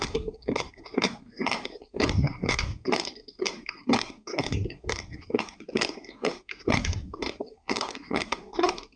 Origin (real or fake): fake